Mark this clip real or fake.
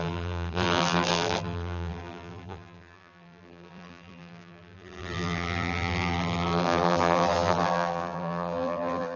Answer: fake